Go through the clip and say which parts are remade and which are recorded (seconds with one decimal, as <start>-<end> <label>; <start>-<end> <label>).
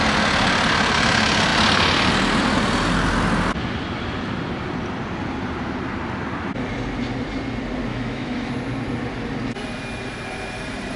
0.0-7.9 recorded; 7.9-8.5 remade; 8.5-11.0 recorded